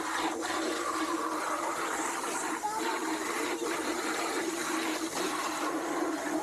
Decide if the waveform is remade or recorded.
remade